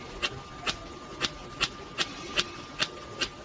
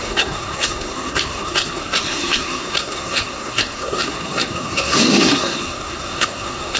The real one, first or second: first